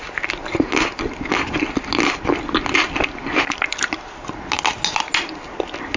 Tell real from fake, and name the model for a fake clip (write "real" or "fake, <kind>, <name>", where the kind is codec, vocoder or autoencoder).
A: real